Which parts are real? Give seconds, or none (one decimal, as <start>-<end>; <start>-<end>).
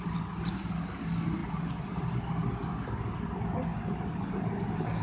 0.0-5.0